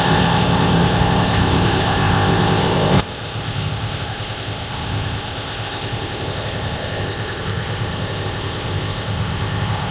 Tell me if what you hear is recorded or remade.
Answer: remade